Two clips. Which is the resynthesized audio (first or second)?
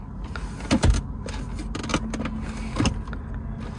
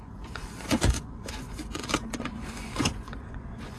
second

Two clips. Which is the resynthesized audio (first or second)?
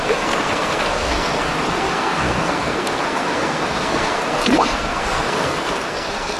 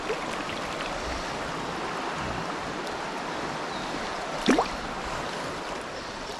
first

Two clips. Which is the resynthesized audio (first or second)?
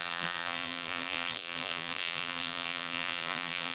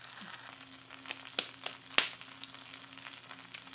first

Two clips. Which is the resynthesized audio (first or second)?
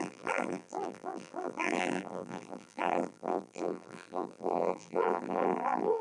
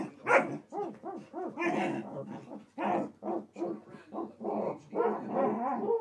first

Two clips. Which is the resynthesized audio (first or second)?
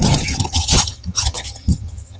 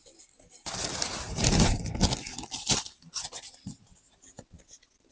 first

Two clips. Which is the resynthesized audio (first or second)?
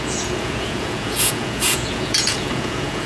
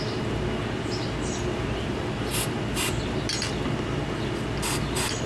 first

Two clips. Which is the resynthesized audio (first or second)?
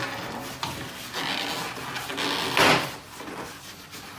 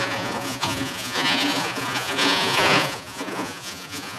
second